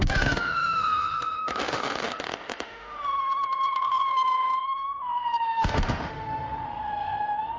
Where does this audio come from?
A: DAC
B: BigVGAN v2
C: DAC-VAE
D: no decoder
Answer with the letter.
C